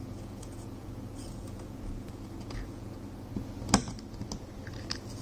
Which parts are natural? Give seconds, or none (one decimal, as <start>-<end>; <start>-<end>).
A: 3.1-5.2